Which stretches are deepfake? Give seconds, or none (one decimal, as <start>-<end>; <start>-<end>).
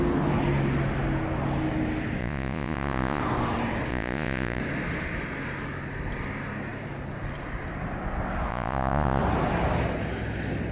2.2-3.2; 3.9-4.6; 8.5-9.2